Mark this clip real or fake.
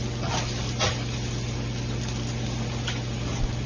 real